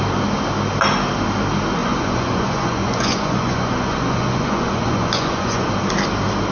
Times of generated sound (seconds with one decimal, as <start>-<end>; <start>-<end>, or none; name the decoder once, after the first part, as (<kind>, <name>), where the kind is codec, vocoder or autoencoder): 1.8-5.7 (vocoder, Vocos)